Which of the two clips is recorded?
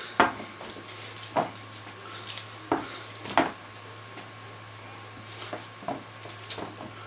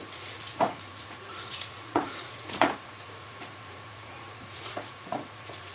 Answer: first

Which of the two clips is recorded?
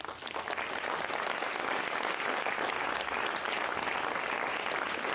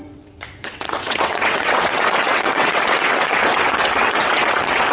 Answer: first